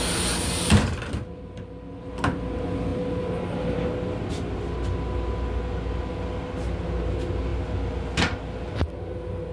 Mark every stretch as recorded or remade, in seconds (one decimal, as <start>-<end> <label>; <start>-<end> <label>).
0.0-9.5 recorded